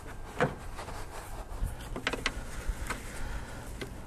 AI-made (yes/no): no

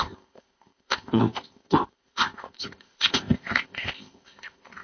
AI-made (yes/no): yes